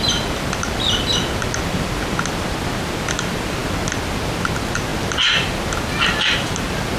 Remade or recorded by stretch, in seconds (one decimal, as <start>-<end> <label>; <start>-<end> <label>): 0.0-7.0 recorded